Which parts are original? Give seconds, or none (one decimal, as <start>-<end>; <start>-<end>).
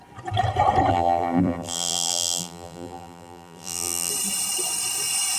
0.0-0.9; 4.1-5.4